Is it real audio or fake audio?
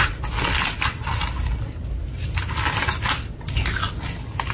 real